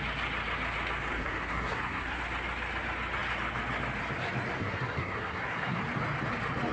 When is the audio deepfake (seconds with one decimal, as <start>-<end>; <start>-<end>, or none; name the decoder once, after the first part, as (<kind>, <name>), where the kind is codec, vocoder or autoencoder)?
1.1-2.2 (codec, SNAC); 4.6-5.8